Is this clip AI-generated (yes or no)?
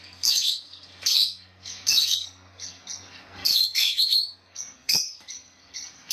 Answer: yes